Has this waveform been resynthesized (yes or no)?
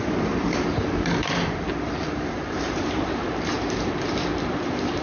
yes